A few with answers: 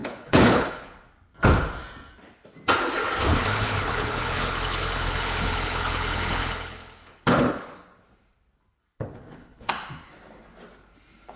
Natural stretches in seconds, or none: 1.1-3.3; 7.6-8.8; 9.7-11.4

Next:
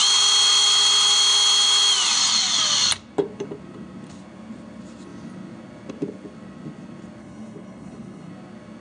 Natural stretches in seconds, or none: 0.0-7.2; 8.3-8.8

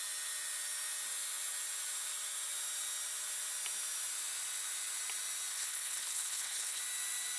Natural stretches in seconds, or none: 0.0-5.5; 6.8-7.4

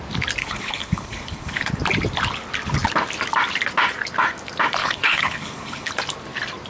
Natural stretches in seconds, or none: 0.0-0.4; 1.7-4.8; 5.9-6.7